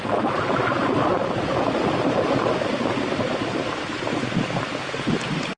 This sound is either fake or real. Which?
real